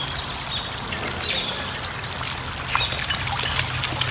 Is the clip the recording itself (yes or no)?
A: yes